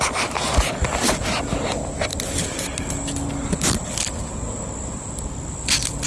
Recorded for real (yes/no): yes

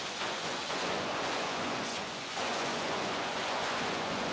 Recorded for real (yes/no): no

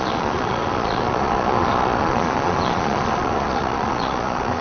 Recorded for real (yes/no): no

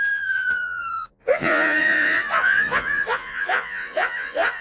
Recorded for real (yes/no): no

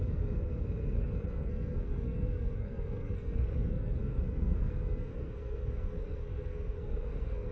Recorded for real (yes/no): no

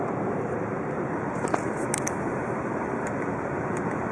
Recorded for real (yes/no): no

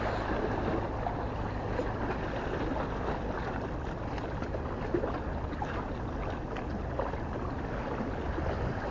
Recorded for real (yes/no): yes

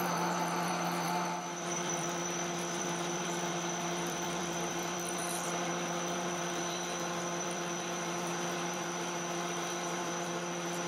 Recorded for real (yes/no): no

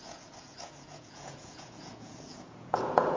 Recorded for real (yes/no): no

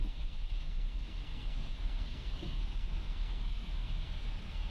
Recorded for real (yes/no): no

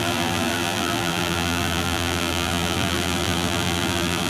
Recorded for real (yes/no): no